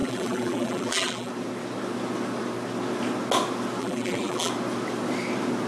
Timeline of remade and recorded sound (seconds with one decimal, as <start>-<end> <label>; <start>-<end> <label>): 0.0-1.3 remade; 1.3-3.8 recorded; 3.8-4.5 remade; 4.5-5.7 recorded